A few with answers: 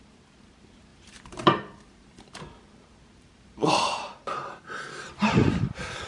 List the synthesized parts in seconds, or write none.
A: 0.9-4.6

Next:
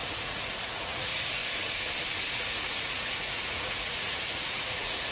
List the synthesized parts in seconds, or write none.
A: 0.0-1.4; 2.3-5.1

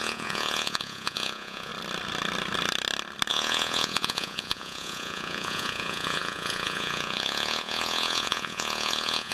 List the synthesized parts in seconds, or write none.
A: 0.0-1.7; 3.3-9.3

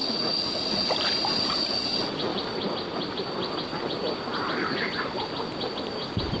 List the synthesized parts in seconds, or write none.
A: 0.0-0.9

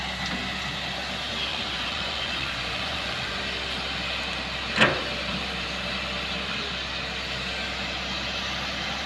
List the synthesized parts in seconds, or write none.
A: 1.5-3.4